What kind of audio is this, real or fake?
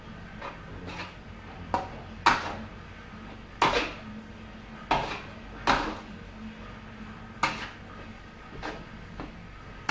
real